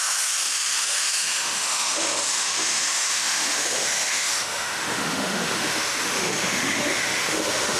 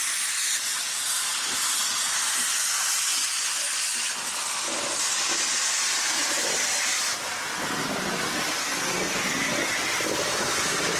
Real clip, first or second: second